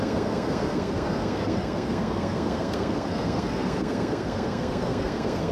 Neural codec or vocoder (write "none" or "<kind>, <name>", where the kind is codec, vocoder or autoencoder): codec, SNAC